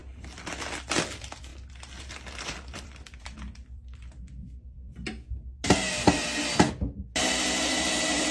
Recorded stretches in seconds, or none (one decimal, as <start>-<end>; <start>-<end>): 0.0-0.5; 1.5-2.4; 4.9-7.2